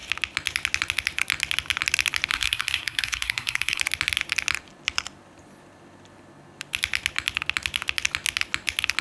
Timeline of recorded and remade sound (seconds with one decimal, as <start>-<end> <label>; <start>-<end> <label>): 0.0-2.3 recorded; 2.3-3.8 remade; 3.8-9.0 recorded